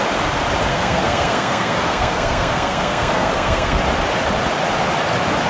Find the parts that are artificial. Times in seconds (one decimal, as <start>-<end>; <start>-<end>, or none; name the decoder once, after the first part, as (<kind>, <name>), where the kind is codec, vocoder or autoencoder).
0.7-3.8 (codec, SNAC)